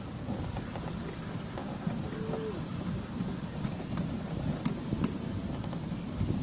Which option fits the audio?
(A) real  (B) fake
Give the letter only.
A